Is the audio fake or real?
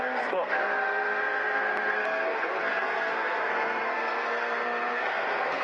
fake